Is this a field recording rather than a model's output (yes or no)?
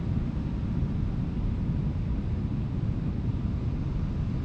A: yes